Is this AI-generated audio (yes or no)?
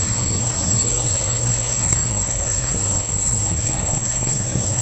yes